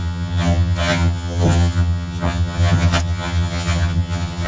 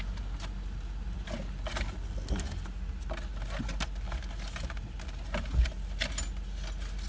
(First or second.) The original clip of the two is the second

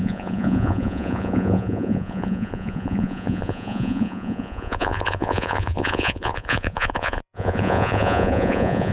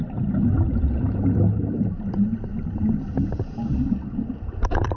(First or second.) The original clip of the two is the second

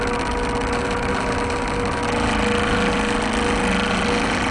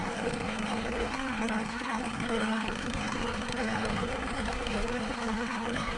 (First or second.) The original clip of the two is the first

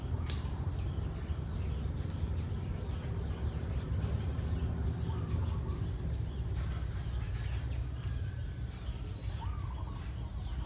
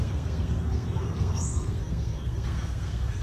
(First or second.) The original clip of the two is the first